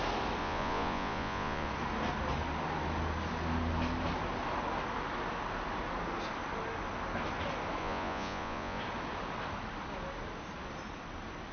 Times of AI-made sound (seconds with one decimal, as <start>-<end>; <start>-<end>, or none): 0.4-1.7; 7.8-8.8